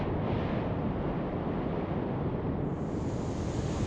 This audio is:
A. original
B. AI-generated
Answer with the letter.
A